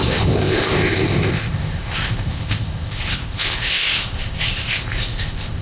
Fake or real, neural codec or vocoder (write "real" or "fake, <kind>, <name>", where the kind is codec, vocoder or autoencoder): fake, codec, ZipCodec